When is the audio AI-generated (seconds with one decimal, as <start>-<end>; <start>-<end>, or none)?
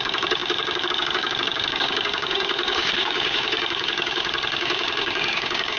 0.0-5.8